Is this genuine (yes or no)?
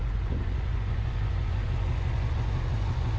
no